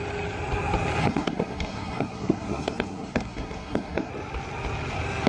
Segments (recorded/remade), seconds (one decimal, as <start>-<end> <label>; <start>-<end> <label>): 0.0-1.0 recorded; 1.0-4.1 remade; 4.1-5.3 recorded